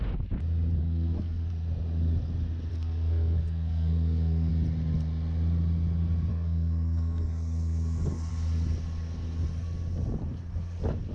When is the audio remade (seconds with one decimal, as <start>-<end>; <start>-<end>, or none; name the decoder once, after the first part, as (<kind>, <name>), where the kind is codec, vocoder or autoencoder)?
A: 0.8-1.5 (codec, SNAC); 2.7-4.5; 6.3-8.3